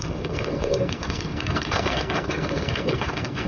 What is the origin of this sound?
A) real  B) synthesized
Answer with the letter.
B